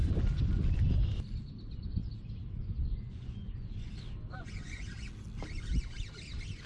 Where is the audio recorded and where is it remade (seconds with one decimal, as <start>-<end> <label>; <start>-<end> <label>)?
0.0-2.4 recorded; 2.4-3.9 remade; 3.9-4.4 recorded; 4.4-4.9 remade; 4.9-6.7 recorded